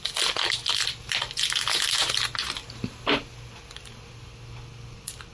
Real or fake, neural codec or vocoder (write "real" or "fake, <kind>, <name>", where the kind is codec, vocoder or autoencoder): real